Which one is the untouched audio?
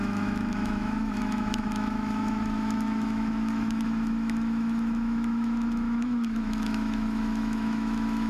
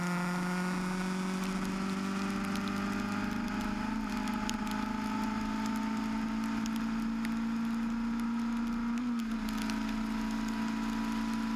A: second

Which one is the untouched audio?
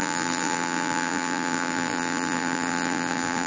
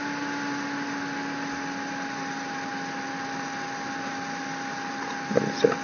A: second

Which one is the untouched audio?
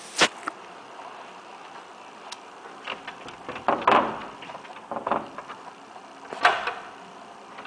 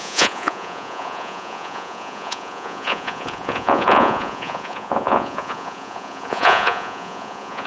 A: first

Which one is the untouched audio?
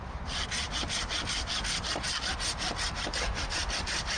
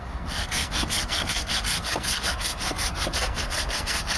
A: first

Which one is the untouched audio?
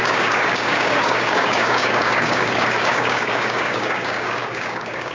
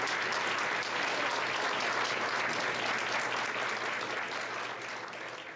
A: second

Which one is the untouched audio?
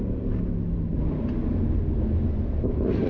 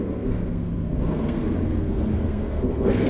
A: first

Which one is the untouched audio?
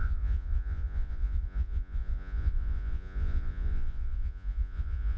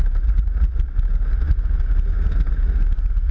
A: second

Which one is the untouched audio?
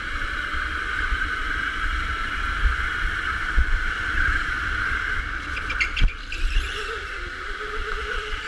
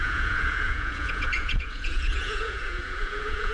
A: first